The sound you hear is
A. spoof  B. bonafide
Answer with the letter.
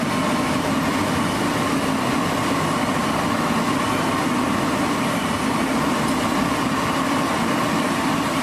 B